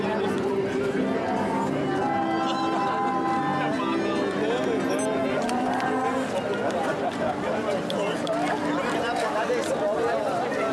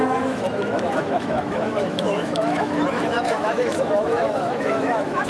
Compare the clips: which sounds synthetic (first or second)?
second